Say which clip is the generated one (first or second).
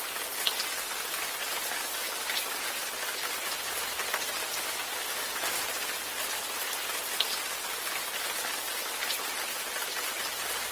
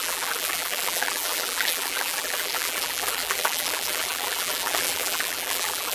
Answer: second